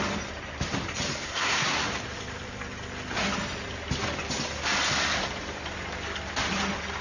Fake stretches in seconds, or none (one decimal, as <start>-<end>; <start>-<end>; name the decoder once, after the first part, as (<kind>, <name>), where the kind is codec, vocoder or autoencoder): 1.2-1.8 (codec, SNAC)